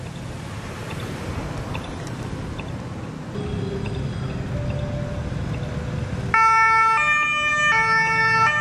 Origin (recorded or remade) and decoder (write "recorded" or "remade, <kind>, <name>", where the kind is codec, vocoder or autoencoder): recorded